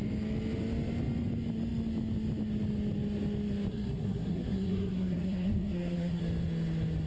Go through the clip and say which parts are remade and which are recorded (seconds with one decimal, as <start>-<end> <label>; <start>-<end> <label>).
0.0-3.7 recorded; 3.7-6.2 remade; 6.2-7.1 recorded